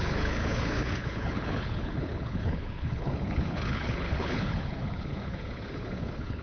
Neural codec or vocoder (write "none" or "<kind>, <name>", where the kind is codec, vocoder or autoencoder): codec, HILCodec